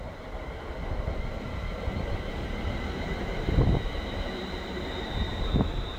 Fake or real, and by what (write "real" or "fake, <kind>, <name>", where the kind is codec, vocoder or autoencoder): real